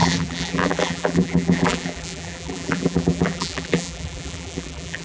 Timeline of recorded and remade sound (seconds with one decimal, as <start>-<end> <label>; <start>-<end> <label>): 0.0-5.0 remade